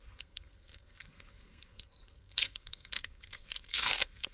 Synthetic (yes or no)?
yes